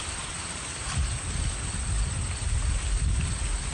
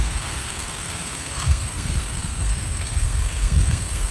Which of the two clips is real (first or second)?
first